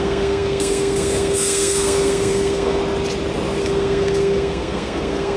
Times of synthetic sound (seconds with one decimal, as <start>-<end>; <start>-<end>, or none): 0.0-2.8; 3.6-5.4